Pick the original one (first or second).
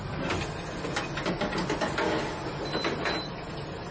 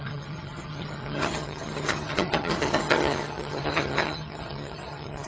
first